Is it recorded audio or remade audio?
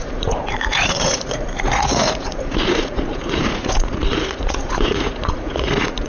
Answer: remade